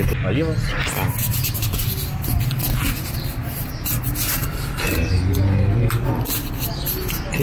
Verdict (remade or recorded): recorded